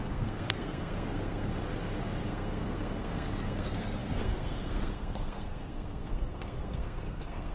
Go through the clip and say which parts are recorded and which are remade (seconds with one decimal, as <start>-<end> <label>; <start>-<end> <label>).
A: 0.0-1.5 remade; 1.5-2.3 recorded; 2.3-7.5 remade